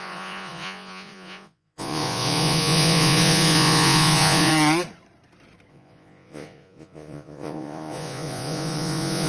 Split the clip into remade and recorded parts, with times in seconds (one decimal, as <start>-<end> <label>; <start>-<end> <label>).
0.0-4.5 remade; 4.5-5.7 recorded; 5.7-9.3 remade